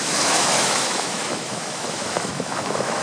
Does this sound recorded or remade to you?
remade